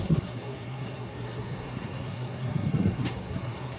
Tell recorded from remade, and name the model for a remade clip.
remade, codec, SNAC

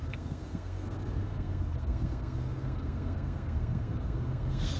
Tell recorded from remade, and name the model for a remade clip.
remade, codec, SNAC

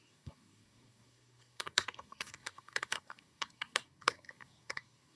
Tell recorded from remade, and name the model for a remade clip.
remade, codec, SNAC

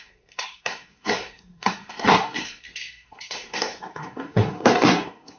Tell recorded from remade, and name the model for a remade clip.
remade, codec, SNAC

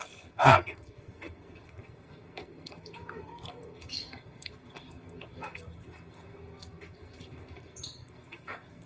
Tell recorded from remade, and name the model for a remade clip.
remade, codec, SNAC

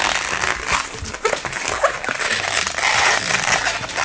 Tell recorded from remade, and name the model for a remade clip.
recorded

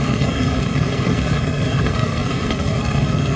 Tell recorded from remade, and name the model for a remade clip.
remade, codec, SNAC